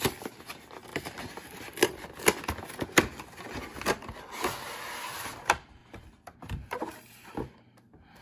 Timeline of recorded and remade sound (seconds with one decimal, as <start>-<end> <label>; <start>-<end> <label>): 0.0-5.8 recorded; 5.8-6.4 remade; 6.4-8.2 recorded